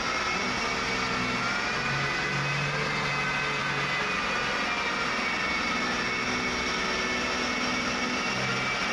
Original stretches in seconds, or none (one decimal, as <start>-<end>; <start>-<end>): 0.0-8.9